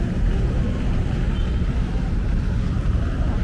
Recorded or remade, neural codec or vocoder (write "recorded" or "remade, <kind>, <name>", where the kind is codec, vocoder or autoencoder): recorded